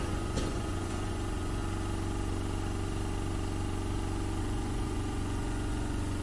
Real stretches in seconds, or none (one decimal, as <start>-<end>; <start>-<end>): 1.6-4.4